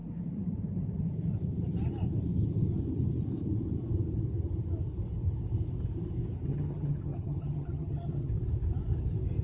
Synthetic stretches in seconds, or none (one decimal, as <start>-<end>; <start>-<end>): 6.5-8.3